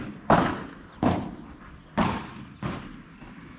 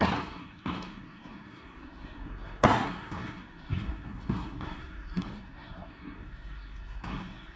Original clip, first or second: first